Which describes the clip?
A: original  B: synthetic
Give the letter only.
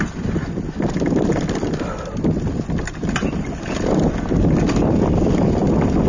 A